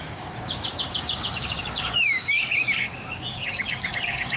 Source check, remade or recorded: remade